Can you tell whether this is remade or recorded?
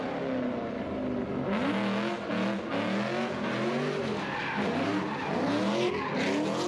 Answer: recorded